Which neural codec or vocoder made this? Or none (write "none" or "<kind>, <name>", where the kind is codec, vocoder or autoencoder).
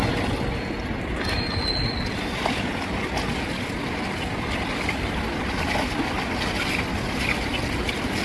none